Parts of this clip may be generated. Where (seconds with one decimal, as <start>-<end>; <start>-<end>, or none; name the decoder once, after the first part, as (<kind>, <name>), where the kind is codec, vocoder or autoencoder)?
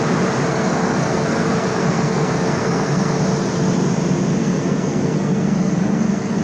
0.5-3.2 (codec, SNAC); 4.4-6.4